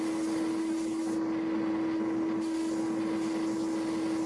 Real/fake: real